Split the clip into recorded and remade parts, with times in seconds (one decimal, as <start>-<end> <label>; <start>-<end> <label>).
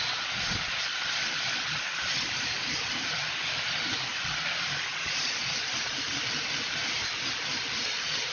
0.0-8.3 recorded